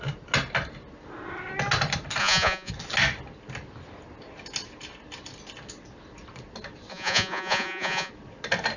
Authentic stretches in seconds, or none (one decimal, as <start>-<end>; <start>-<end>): 0.0-2.2; 2.7-6.9; 8.1-8.8